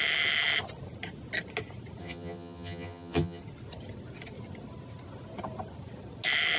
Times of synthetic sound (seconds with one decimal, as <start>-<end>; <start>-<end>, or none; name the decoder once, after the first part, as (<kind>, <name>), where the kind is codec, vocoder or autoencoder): 2.0-3.4 (vocoder, HiFi-GAN)